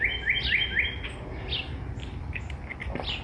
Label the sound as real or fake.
real